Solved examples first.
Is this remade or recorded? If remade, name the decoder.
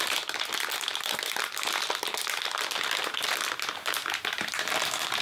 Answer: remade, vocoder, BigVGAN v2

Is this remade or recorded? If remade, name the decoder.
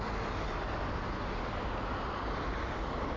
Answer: recorded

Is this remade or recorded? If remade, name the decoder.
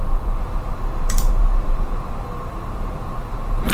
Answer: remade, vocoder, BigVGAN v2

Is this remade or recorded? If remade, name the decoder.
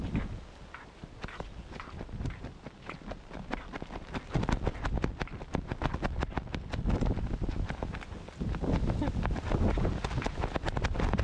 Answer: recorded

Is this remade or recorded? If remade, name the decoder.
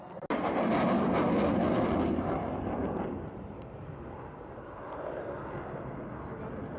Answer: recorded